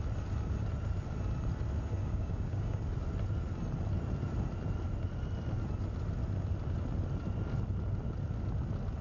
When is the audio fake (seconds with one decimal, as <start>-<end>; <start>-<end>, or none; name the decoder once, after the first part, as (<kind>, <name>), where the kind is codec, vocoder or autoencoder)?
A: 2.0-2.8 (codec, DAC)